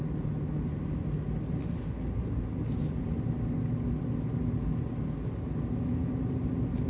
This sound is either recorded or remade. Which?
recorded